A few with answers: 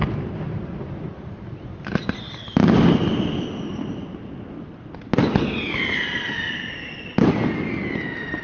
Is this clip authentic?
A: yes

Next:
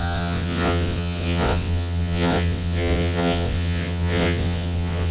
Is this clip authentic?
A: no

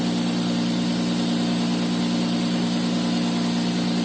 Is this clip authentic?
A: yes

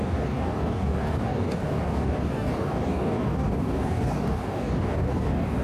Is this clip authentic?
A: no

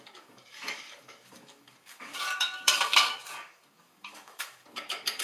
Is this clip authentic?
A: no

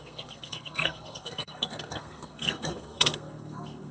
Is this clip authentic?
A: no